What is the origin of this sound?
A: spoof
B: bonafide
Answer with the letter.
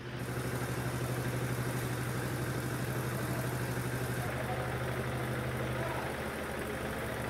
B